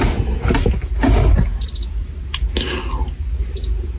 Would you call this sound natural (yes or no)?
yes